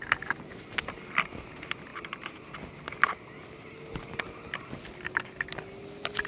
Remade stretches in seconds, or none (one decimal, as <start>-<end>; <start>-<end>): none